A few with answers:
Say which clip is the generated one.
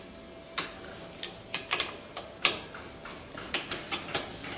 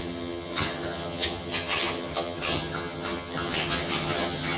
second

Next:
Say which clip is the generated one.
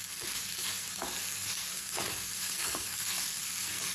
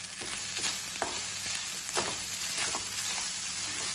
first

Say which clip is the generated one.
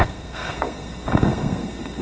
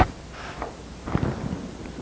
first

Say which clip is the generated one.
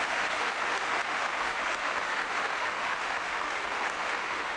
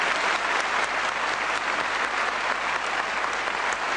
first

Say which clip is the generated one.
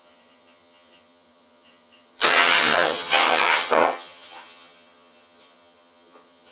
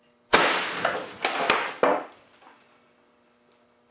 first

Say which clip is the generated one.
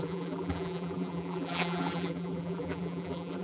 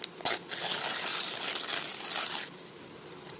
first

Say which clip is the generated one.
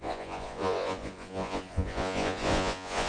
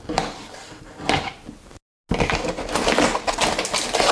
first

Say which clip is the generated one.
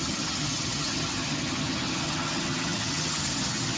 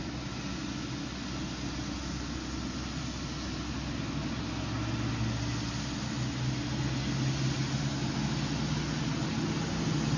first